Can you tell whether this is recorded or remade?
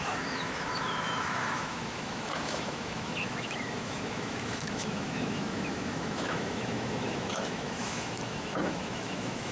remade